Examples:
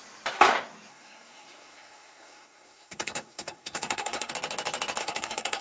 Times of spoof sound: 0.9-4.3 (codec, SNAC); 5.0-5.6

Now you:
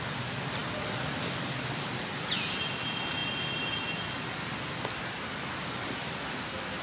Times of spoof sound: none

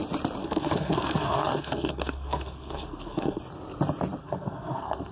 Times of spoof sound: 0.4-3.4 (codec, SNAC); 4.2-5.1

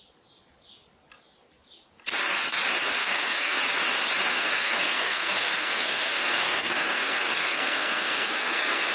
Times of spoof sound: 3.0-3.6 (codec, SNAC); 4.3-8.9

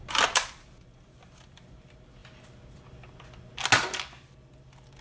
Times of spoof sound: none

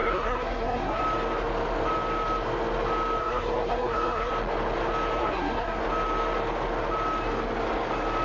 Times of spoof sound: 0.0-1.0 (codec, SNAC); 3.2-4.3; 5.2-5.8